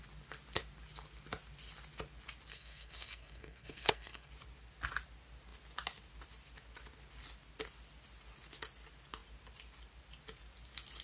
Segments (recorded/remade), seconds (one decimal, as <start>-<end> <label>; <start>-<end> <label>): 0.0-2.5 recorded; 2.5-4.3 remade; 4.3-11.0 recorded